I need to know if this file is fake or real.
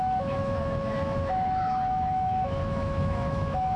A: fake